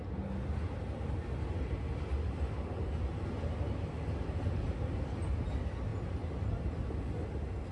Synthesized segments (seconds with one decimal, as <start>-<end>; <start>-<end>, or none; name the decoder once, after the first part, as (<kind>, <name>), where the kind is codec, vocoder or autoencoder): none